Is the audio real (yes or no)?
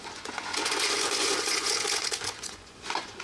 no